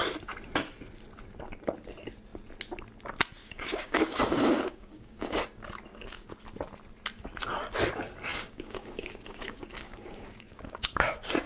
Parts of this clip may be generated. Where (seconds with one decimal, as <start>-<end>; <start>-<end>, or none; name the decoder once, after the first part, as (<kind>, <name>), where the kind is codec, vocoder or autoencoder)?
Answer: 3.4-5.4 (codec, DAC); 5.9-6.4; 8.3-11.1